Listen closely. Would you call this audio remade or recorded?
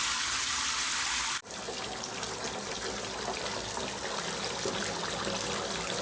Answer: recorded